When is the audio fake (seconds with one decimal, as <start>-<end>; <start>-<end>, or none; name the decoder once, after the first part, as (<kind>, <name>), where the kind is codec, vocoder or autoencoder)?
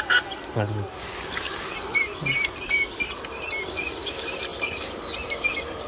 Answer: none